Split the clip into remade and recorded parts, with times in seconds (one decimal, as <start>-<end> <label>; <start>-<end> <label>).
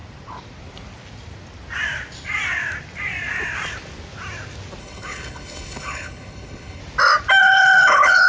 0.0-4.8 recorded; 4.8-6.8 remade; 6.8-7.4 recorded; 7.4-8.3 remade